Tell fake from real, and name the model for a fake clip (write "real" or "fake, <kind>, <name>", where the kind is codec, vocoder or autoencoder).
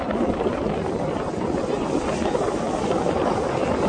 real